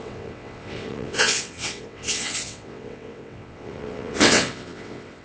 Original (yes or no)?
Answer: no